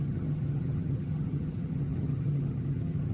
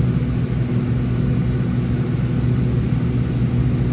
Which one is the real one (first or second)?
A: second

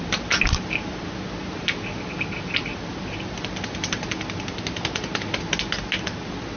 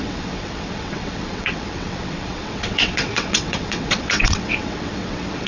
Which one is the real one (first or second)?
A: first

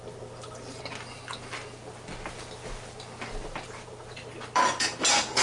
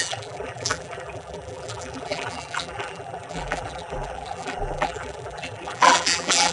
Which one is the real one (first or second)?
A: first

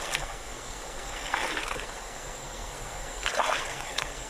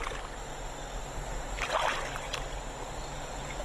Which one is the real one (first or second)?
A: second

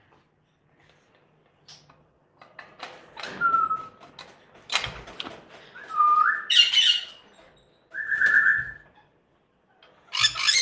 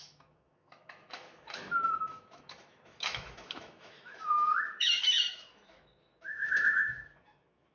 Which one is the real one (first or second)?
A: first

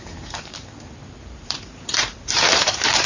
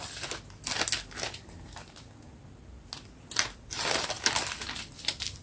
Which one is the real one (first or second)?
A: second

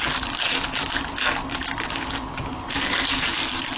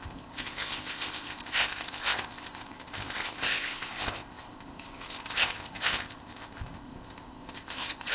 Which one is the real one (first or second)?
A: first